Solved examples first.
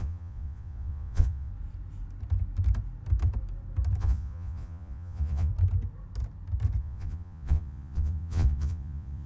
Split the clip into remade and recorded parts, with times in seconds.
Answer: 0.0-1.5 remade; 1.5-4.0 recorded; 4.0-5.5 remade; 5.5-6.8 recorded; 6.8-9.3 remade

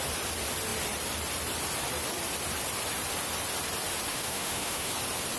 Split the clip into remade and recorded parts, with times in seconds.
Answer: 0.0-4.1 recorded; 4.1-4.9 remade; 4.9-5.4 recorded

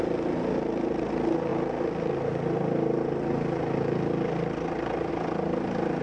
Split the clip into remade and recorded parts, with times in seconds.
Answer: 0.0-6.0 recorded

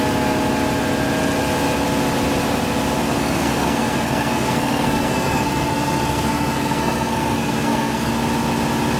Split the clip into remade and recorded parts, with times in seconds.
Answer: 0.0-3.0 recorded; 3.0-8.1 remade; 8.1-9.0 recorded

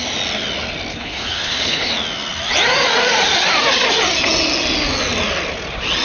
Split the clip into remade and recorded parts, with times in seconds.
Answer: 0.0-0.9 recorded; 0.9-1.9 remade; 1.9-6.0 recorded

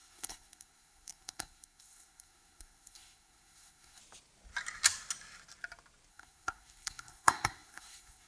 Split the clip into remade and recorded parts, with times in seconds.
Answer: 0.0-4.0 remade; 4.0-6.1 recorded; 6.1-8.3 remade